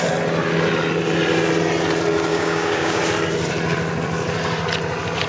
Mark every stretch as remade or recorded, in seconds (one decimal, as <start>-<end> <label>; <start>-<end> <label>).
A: 0.0-2.3 recorded; 2.3-3.0 remade; 3.0-5.3 recorded